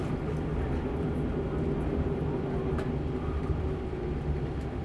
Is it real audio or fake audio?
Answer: real